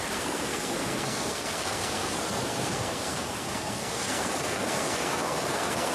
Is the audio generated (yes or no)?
yes